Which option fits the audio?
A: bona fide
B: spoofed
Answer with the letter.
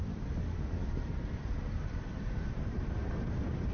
B